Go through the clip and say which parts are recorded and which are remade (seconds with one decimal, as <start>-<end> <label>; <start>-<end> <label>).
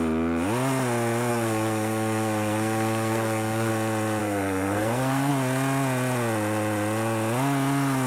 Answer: 0.0-1.3 recorded; 1.3-3.7 remade; 3.7-4.2 recorded; 4.2-5.3 remade; 5.3-8.1 recorded